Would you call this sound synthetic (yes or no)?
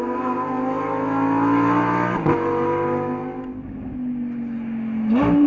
no